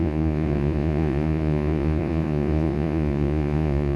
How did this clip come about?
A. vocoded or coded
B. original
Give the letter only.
A